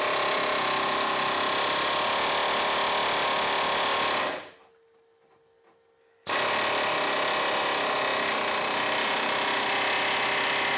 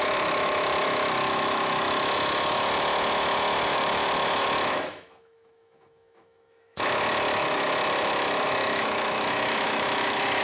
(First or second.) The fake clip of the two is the second